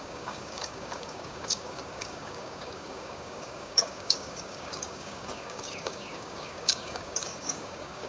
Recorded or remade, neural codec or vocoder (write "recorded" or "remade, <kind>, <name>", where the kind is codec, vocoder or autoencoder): remade, codec, DAC